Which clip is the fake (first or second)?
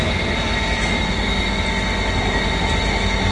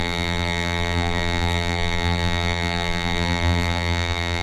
second